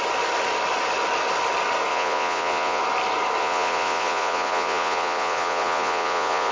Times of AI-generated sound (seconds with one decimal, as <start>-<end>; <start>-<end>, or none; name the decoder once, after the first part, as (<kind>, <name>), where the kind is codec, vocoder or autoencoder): 1.9-2.8 (vocoder, Vocos); 3.4-6.5